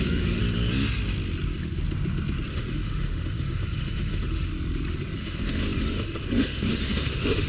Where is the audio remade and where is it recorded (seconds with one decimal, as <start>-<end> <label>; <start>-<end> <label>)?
0.0-0.4 remade; 0.4-2.5 recorded; 2.5-4.5 remade; 4.5-5.2 recorded; 5.2-7.5 remade